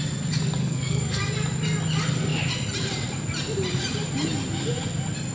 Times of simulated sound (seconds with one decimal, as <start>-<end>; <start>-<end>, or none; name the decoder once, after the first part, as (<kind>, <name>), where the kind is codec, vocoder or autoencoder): 0.6-1.2 (codec, SNAC)